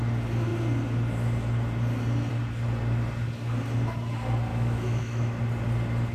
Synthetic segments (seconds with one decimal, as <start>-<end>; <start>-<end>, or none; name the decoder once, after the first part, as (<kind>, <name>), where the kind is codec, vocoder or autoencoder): 4.5-5.4 (autoencoder, DAC-VAE)